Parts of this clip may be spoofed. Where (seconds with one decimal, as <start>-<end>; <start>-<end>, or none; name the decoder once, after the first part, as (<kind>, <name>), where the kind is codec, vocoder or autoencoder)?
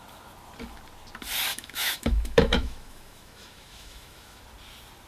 1.5-4.4 (autoencoder, DAC-VAE)